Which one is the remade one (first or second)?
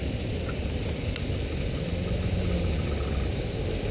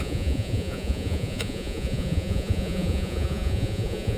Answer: second